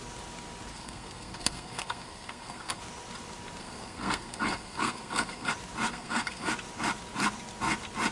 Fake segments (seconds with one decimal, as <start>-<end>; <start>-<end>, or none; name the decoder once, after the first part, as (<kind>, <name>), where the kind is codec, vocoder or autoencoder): 0.7-2.8 (codec, SNAC); 3.6-5.5; 5.9-6.5